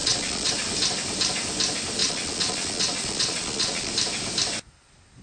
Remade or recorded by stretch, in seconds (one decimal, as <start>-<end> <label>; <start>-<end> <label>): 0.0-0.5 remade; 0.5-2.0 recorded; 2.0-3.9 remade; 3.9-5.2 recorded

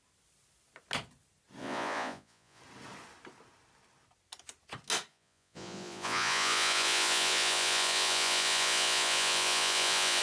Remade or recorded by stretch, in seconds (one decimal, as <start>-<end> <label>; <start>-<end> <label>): 0.0-1.6 recorded; 1.6-2.6 remade; 2.6-5.1 recorded; 5.1-10.2 remade

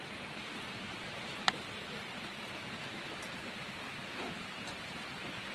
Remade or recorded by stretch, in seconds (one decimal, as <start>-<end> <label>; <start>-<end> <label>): 0.0-1.3 recorded; 1.3-4.4 remade; 4.4-5.5 recorded

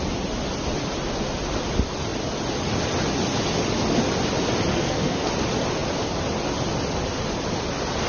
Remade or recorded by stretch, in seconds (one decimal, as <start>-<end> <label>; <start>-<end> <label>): 0.0-4.7 recorded; 4.7-5.3 remade; 5.3-8.1 recorded

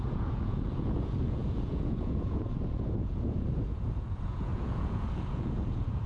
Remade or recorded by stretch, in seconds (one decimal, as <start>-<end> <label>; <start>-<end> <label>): 0.0-6.1 remade

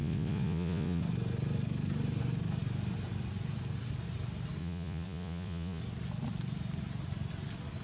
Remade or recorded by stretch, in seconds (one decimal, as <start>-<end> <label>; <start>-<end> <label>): 0.0-1.0 remade; 1.0-4.6 recorded; 4.6-5.8 remade; 5.8-7.8 recorded